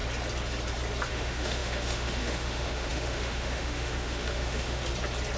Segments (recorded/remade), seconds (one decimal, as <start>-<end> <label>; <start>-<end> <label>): 0.0-1.1 recorded; 1.1-4.8 remade; 4.8-5.4 recorded